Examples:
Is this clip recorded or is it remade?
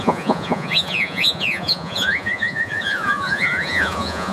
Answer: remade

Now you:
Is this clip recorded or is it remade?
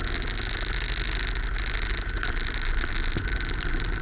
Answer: recorded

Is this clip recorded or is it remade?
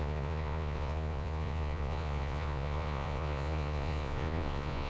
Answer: remade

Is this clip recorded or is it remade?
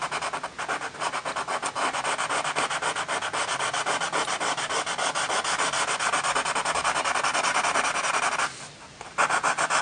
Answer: recorded